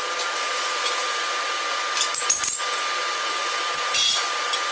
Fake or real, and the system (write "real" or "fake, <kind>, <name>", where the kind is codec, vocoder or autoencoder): real